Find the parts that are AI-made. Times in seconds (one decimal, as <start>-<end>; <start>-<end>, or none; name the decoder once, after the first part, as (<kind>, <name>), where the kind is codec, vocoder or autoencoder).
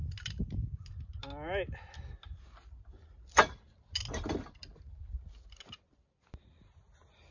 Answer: none